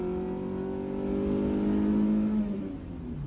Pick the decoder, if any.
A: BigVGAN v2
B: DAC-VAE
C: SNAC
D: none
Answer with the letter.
D